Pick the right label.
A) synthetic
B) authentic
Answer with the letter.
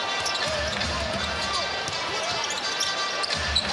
B